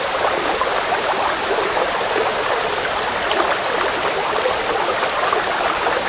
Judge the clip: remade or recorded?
remade